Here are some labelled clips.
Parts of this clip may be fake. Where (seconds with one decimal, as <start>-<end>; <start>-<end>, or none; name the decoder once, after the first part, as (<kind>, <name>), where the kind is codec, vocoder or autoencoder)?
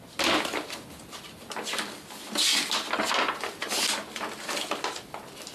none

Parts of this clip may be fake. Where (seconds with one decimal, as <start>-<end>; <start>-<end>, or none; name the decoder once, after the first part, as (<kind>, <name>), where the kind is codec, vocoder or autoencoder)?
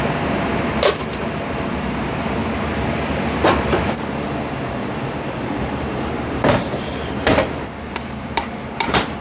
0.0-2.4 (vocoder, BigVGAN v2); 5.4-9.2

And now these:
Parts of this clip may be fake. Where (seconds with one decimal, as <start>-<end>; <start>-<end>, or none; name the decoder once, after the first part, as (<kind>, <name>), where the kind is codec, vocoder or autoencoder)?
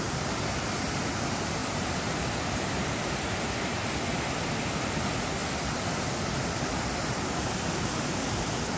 1.6-3.1 (vocoder, BigVGAN v2)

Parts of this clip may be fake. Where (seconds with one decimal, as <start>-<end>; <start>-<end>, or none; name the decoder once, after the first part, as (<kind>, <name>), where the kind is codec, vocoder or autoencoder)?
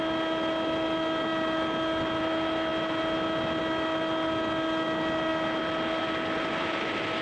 none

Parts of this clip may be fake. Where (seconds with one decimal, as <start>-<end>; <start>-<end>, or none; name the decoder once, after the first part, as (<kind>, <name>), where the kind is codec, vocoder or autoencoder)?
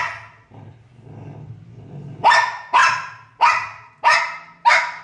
none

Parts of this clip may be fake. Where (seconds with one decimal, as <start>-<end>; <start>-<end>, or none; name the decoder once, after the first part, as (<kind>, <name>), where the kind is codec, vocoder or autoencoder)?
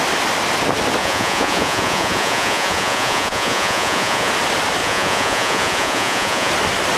1.0-4.3 (vocoder, Vocos); 4.8-6.5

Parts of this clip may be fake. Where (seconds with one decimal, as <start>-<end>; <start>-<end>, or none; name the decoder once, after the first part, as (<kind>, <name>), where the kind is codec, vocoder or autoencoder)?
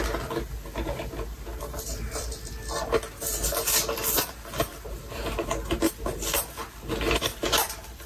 7.3-8.1 (vocoder, BigVGAN v2)